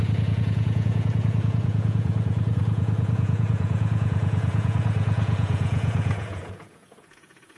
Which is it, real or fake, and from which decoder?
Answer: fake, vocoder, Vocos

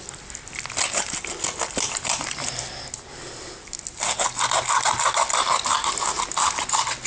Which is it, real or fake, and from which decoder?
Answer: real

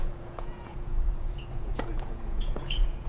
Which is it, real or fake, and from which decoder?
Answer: fake, vocoder, Vocos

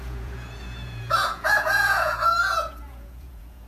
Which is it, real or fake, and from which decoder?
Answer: fake, vocoder, Vocos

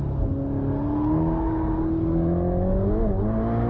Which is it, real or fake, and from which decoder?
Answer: real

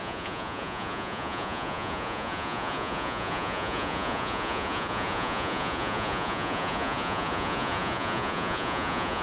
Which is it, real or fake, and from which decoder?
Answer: fake, vocoder, Vocos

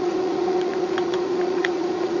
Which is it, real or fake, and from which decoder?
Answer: fake, vocoder, Vocos